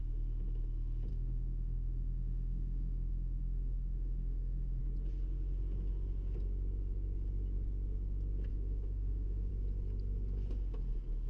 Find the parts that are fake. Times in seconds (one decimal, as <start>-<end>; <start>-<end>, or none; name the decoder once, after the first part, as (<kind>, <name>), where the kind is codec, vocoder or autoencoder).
1.1-4.8 (autoencoder, DAC-VAE); 8.5-9.5